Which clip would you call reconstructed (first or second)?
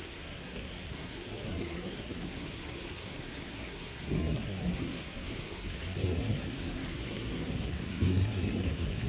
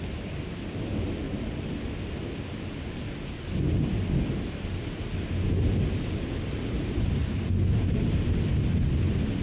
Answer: first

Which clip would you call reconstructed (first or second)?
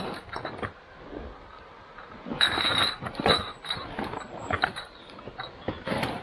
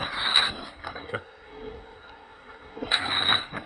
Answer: second